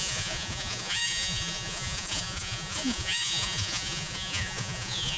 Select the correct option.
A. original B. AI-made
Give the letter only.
B